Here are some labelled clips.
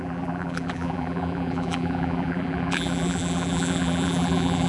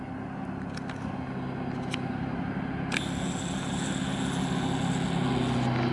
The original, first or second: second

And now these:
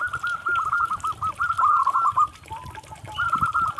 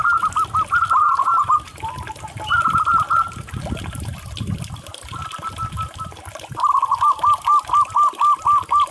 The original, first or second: second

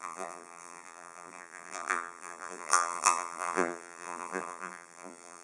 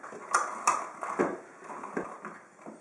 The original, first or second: second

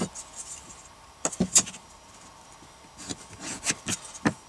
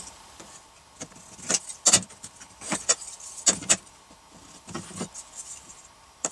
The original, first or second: first